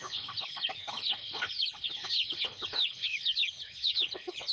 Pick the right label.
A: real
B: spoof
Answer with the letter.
B